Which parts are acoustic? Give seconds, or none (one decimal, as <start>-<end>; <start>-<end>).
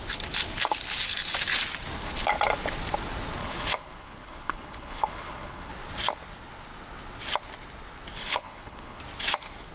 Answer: 0.0-3.4; 5.7-8.2; 9.0-9.7